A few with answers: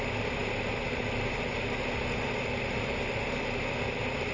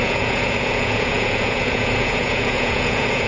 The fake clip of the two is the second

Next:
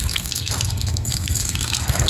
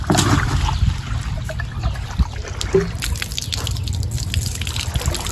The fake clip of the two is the first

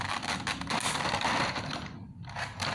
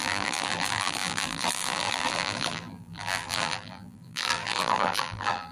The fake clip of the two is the second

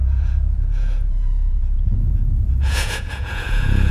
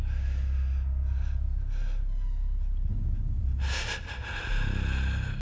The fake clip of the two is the first